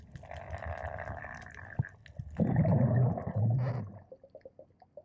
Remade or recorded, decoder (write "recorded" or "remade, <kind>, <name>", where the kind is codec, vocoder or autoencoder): recorded